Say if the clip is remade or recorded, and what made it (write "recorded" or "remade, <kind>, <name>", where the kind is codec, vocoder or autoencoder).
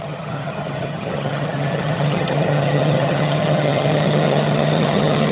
remade, vocoder, HiFi-GAN